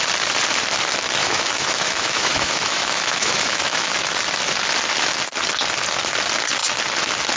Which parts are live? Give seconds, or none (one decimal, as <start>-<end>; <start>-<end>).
0.0-1.2; 3.9-7.4